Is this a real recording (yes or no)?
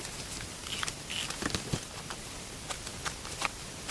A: yes